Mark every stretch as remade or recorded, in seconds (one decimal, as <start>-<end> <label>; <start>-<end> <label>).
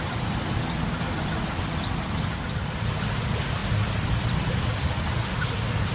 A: 0.0-5.9 recorded